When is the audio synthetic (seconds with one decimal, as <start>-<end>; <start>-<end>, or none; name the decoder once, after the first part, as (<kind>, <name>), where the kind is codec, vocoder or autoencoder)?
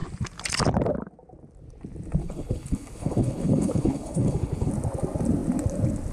2.2-4.7 (codec, HILCodec)